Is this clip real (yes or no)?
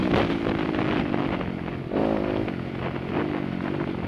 yes